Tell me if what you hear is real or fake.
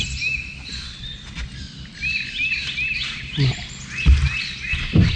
real